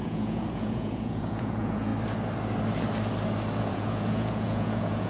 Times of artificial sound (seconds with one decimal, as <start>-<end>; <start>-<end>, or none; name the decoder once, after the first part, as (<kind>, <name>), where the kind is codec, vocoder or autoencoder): 0.0-1.9 (vocoder, Vocos); 3.6-5.1